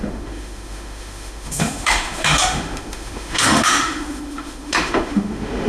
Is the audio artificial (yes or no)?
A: yes